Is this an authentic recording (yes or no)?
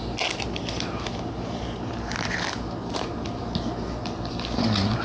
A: yes